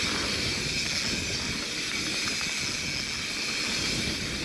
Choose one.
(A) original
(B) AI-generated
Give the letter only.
A